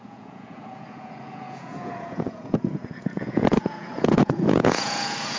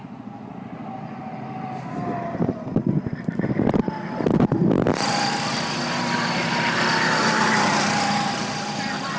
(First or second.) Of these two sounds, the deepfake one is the first